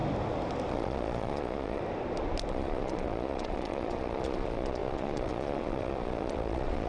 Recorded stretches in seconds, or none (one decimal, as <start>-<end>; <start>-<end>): 0.0-0.7; 1.8-2.5

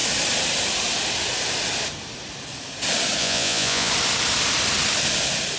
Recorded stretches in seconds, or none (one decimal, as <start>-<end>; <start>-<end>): 0.0-3.2; 3.9-5.6

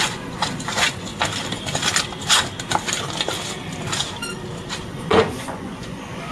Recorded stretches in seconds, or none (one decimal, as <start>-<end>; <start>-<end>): 1.1-4.9

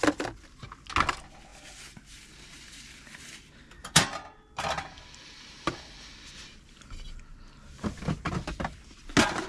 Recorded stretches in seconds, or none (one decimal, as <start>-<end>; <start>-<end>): 0.0-9.5

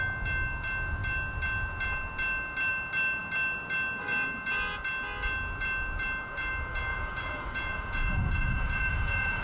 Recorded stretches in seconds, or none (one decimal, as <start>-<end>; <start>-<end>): 0.0-6.9